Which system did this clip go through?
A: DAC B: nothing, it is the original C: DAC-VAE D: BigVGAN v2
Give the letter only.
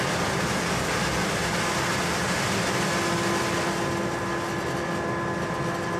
B